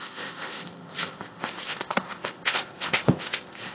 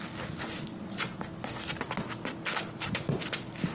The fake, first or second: first